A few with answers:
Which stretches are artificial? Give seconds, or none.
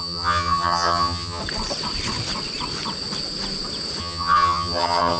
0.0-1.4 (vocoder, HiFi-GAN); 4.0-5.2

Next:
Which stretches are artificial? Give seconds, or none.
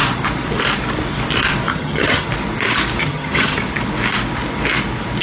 1.7-2.3 (vocoder, HiFi-GAN); 3.0-3.6